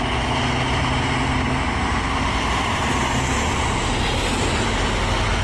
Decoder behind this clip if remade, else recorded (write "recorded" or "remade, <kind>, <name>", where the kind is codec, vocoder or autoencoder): recorded